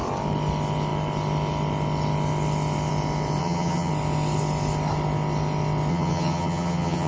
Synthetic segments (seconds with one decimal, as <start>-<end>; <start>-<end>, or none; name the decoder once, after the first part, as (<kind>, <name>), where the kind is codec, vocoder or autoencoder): 3.4-3.9 (vocoder, HiFi-GAN); 5.9-7.1